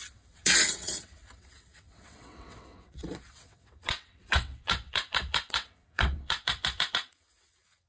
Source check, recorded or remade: remade